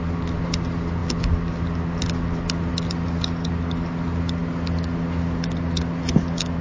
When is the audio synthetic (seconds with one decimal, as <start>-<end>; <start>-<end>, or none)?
none